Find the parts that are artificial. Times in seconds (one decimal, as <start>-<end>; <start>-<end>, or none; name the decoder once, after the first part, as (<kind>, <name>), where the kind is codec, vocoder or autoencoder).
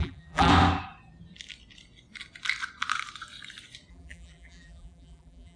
0.0-0.5 (vocoder, BigVGAN v2); 3.9-5.6